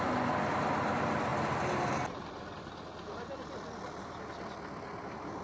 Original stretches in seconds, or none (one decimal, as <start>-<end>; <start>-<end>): 0.0-5.4